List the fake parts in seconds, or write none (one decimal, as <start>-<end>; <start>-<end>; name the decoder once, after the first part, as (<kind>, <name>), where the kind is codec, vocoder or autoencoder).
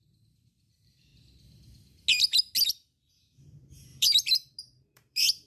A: 0.0-1.1 (vocoder, BigVGAN v2); 3.1-5.5